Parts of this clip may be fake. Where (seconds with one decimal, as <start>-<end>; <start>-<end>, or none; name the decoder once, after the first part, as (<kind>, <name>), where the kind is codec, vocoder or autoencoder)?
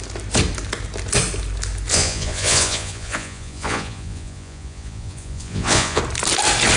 1.9-6.0 (vocoder, Vocos)